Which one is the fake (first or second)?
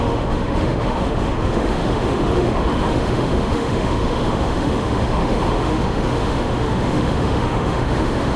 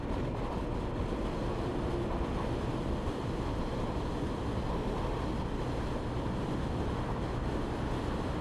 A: first